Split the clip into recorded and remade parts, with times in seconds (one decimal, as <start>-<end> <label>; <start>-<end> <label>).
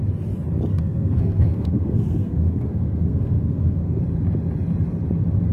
0.0-0.7 recorded; 0.7-4.0 remade; 4.0-5.5 recorded